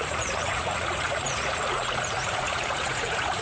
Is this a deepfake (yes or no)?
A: yes